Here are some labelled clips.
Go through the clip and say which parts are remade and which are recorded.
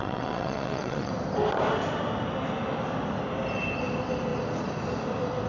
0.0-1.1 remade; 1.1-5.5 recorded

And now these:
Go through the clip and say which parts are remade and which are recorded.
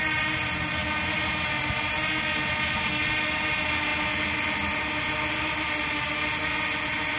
0.0-7.2 recorded